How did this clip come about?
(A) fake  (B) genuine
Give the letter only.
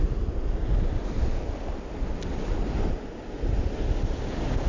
B